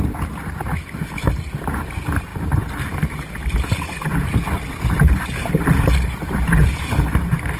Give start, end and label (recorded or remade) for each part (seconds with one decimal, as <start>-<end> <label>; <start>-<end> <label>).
0.0-0.7 recorded; 0.7-1.3 remade; 1.3-7.6 recorded